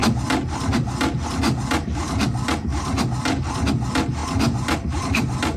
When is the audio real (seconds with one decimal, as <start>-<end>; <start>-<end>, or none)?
0.0-5.6